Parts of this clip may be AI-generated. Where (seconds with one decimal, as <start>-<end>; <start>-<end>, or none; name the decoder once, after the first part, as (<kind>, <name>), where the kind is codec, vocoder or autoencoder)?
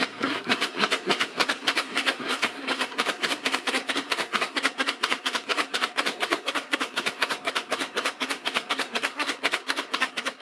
0.0-10.4 (codec, SNAC)